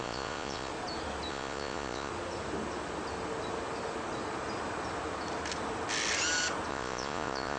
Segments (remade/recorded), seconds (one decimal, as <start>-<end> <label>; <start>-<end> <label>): 0.0-0.7 remade; 0.7-1.3 recorded; 1.3-2.1 remade; 2.1-6.7 recorded; 6.7-7.6 remade